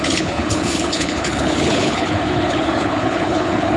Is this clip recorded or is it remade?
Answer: remade